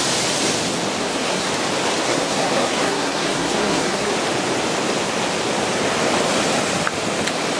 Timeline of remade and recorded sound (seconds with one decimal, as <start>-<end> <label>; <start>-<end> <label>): 0.0-1.0 recorded; 1.0-1.5 remade; 1.5-2.1 recorded; 2.1-4.1 remade; 4.1-7.6 recorded